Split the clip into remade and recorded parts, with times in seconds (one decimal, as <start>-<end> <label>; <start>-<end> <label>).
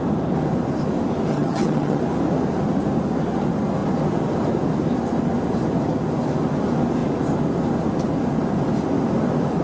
0.0-1.3 recorded; 1.3-2.0 remade; 2.0-9.6 recorded